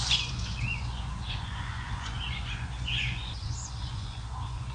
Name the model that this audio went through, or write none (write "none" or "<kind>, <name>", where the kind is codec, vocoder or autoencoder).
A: vocoder, Vocos